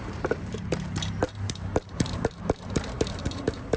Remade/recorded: remade